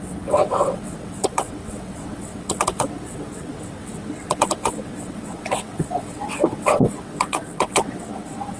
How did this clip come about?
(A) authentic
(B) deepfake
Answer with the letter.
B